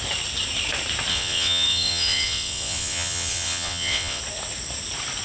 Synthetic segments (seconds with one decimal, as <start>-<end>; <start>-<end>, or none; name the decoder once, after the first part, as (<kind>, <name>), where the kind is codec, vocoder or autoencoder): 1.1-4.2 (vocoder, WaveNeXt)